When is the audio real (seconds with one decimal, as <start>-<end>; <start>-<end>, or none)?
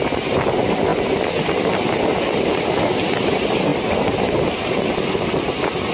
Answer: 0.0-5.9